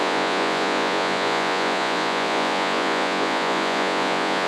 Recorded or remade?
remade